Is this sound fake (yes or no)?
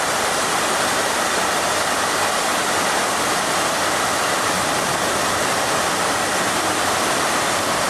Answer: yes